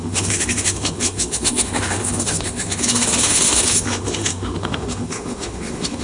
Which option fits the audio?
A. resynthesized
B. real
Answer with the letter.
A